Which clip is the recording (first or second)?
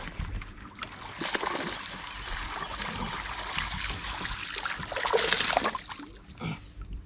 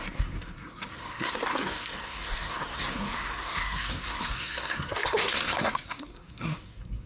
first